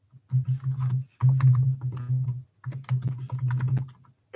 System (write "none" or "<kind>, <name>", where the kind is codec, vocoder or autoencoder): none